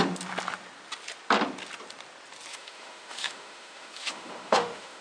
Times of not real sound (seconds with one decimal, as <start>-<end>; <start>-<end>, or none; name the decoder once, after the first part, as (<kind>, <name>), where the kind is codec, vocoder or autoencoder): 2.5-5.0 (autoencoder, DAC-VAE)